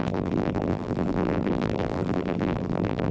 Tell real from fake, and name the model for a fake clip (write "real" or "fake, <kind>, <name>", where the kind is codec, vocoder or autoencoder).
fake, vocoder, BigVGAN v2